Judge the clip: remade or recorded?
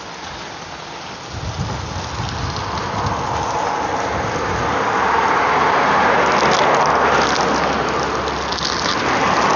recorded